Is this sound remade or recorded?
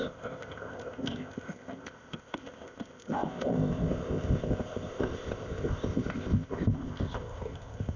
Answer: remade